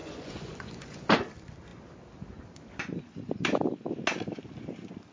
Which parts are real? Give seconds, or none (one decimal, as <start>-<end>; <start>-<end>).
1.1-5.1